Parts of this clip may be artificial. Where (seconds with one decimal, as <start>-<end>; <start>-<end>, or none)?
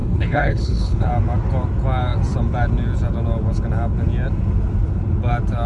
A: 0.0-1.1